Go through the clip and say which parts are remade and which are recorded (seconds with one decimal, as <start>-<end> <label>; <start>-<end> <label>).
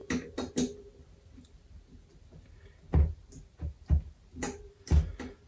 0.0-5.5 recorded